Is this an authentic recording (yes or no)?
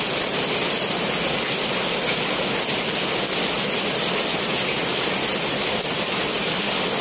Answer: yes